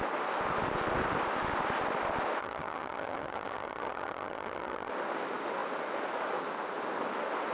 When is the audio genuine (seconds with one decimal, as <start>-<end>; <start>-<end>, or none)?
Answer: 0.0-2.4; 4.9-7.5